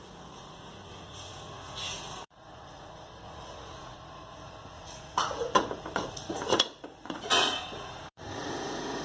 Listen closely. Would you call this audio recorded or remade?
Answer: remade